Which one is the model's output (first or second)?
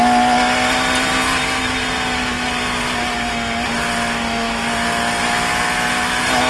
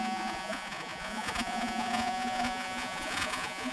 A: second